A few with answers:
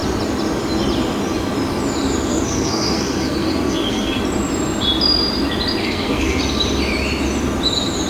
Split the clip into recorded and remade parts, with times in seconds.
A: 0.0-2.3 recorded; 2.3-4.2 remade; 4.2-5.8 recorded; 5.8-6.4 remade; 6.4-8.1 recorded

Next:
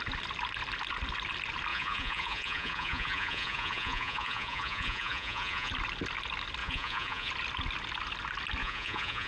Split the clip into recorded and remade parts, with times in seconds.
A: 0.0-1.7 recorded; 1.7-5.7 remade; 5.7-6.6 recorded; 6.6-7.3 remade; 7.3-8.6 recorded; 8.6-9.3 remade

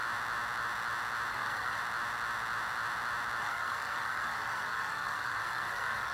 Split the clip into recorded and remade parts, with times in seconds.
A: 0.0-1.3 recorded; 1.3-1.8 remade; 1.8-3.4 recorded; 3.4-6.1 remade

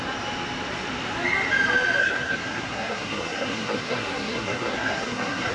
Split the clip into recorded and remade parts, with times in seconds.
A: 0.0-2.0 recorded; 2.0-5.5 remade

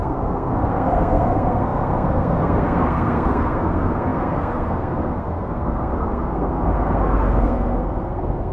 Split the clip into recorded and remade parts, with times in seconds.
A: 0.0-8.5 remade

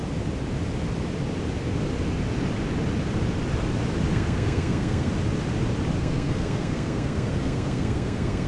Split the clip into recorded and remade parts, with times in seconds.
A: 0.0-4.1 recorded; 4.1-5.1 remade; 5.1-6.0 recorded; 6.0-8.5 remade

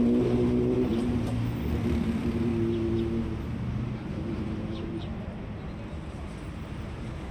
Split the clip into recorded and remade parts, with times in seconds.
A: 0.0-0.9 remade; 0.9-1.7 recorded; 1.7-2.5 remade; 2.5-3.6 recorded; 3.6-5.1 remade; 5.1-5.9 recorded; 5.9-7.3 remade